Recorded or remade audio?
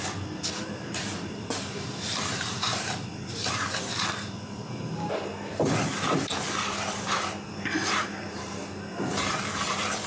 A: remade